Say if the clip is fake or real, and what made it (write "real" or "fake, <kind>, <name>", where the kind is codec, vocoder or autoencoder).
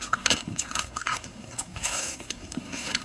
fake, codec, SNAC